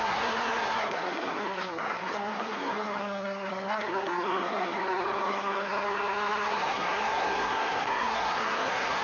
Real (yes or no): no